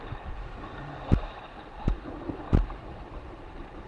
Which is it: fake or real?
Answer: real